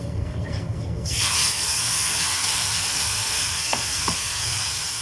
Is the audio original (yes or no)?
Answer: no